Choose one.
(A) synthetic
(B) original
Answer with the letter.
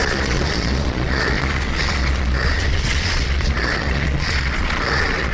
A